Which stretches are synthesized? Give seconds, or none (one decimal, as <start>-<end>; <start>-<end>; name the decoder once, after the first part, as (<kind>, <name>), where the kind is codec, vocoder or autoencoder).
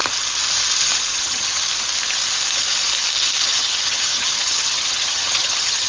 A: 1.1-1.6 (vocoder, HiFi-GAN); 3.4-5.9